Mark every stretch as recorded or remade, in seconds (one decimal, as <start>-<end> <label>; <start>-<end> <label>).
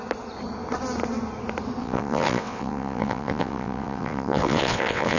0.0-1.8 recorded; 1.8-5.2 remade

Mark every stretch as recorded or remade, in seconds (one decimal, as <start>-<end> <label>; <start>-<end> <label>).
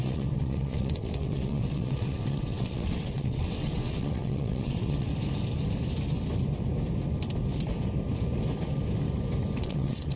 0.0-5.1 remade; 5.1-9.6 recorded; 9.6-10.2 remade